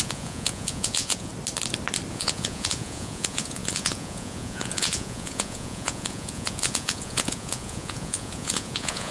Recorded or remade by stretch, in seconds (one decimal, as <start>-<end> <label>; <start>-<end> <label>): 0.0-1.3 remade; 1.3-2.1 recorded; 2.1-9.1 remade